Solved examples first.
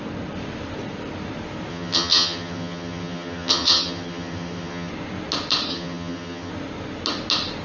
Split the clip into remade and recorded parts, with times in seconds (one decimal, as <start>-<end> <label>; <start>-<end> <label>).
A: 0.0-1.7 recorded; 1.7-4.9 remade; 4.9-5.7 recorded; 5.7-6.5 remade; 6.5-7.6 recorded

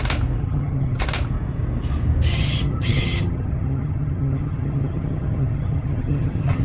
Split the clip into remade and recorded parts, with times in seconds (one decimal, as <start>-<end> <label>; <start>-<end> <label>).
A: 0.0-0.4 recorded; 0.4-1.0 remade; 1.0-2.3 recorded; 2.3-6.6 remade

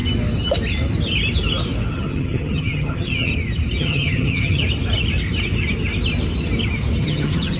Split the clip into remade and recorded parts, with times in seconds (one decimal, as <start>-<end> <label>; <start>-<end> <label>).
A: 0.0-1.9 recorded; 1.9-3.3 remade; 3.3-3.8 recorded; 3.8-4.6 remade; 4.6-7.0 recorded; 7.0-7.6 remade

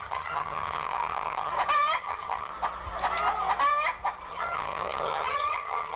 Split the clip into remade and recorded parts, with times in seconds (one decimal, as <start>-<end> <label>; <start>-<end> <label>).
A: 0.0-1.5 remade; 1.5-2.0 recorded; 2.0-2.5 remade; 2.5-4.3 recorded; 4.3-6.0 remade

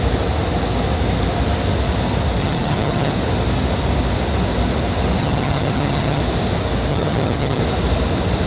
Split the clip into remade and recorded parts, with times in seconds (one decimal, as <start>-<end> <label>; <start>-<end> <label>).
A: 0.0-2.4 recorded; 2.4-3.1 remade; 3.1-5.2 recorded; 5.2-6.2 remade; 6.2-6.9 recorded; 6.9-7.6 remade; 7.6-8.5 recorded